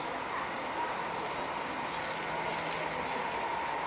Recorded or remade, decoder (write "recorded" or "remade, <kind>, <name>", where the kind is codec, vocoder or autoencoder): recorded